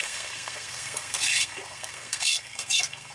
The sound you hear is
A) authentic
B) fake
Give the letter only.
B